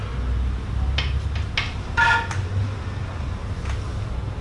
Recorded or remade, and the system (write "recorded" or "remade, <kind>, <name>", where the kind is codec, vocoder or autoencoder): recorded